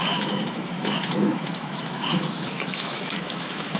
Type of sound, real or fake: fake